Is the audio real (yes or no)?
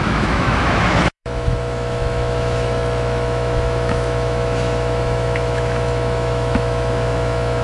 no